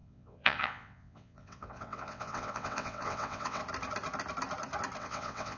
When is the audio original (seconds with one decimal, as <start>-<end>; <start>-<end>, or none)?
3.6-5.0